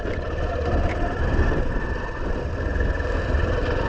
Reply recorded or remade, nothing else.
recorded